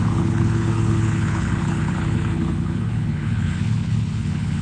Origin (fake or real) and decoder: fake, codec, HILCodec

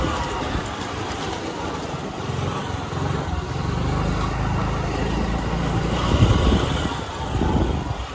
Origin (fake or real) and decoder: real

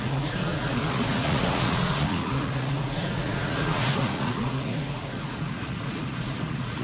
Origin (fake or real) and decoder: fake, vocoder, Vocos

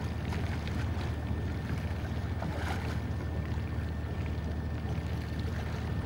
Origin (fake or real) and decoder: real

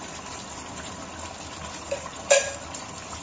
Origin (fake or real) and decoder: fake, vocoder, BigVGAN v2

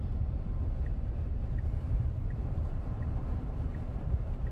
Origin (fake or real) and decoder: fake, vocoder, BigVGAN v2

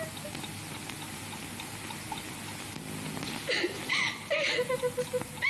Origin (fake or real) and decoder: real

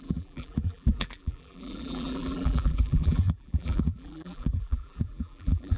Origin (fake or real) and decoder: fake, vocoder, BigVGAN v2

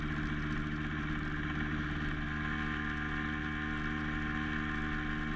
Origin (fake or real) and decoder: real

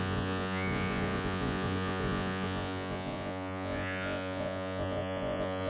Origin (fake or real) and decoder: fake, vocoder, Vocos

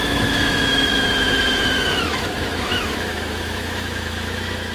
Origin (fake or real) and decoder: fake, autoencoder, DAC-VAE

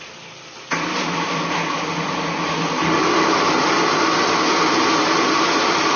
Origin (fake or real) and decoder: real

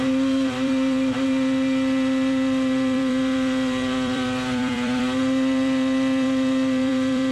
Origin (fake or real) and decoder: fake, vocoder, BigVGAN v2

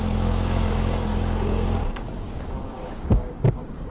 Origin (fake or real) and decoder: fake, codec, DAC